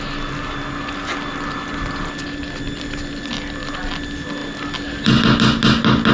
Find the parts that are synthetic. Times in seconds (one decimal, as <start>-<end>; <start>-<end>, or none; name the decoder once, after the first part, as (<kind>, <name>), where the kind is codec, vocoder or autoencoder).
none